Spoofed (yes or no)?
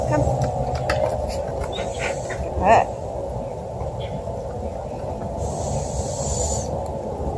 no